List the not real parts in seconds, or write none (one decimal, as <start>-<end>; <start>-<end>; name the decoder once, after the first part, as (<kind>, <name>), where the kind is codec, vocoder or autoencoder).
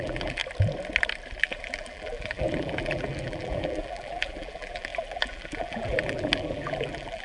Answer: 0.0-0.4 (vocoder, BigVGAN v2); 1.4-7.2